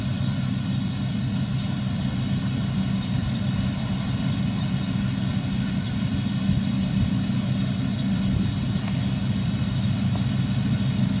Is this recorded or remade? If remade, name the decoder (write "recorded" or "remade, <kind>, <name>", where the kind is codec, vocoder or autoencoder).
recorded